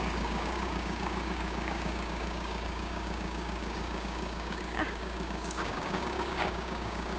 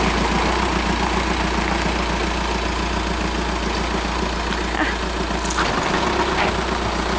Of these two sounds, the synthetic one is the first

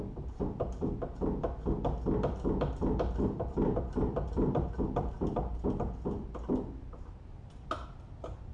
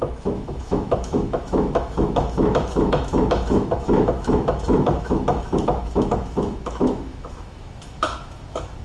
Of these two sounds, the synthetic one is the second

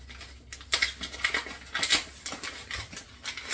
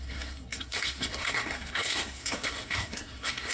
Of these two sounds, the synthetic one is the second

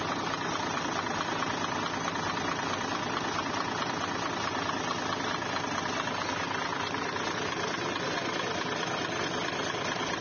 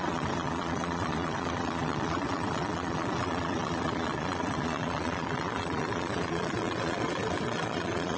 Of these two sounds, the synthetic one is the second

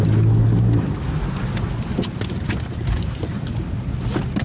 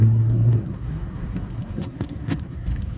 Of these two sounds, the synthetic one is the second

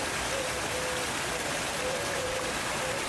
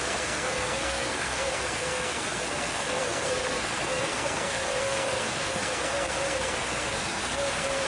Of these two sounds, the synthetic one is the second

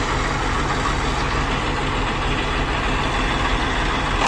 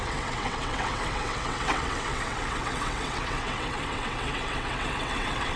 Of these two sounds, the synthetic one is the second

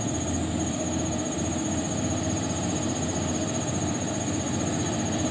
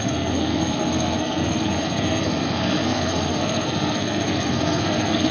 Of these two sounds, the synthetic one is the second